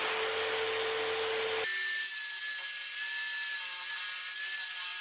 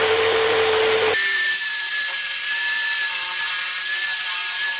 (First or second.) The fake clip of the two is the second